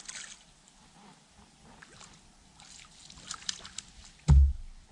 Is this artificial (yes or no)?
no